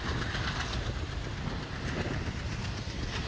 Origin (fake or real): real